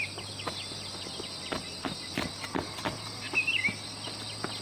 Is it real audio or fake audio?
real